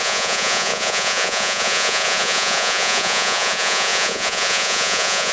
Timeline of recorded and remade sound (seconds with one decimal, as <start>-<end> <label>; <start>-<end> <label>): 0.0-5.3 remade